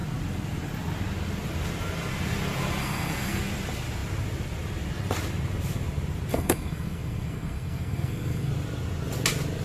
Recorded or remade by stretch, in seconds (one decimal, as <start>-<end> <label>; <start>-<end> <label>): 0.0-2.8 recorded; 2.8-3.4 remade; 3.4-6.3 recorded; 6.3-8.5 remade; 8.5-9.6 recorded